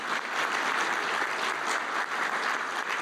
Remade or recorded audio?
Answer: recorded